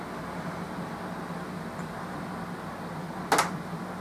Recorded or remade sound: recorded